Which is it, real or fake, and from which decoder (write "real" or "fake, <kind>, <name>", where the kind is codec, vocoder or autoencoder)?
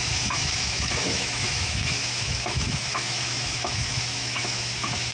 fake, autoencoder, DAC-VAE